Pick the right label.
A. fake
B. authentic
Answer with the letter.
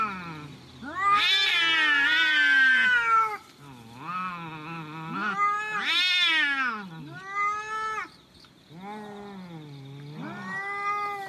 B